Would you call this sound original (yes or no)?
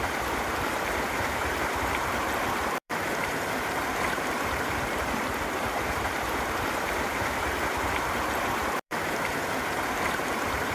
no